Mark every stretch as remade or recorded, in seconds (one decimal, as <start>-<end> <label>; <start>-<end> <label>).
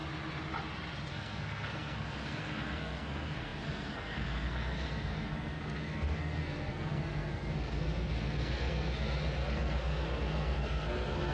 0.0-1.1 recorded; 1.1-11.3 remade